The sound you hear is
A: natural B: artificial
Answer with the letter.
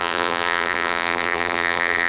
B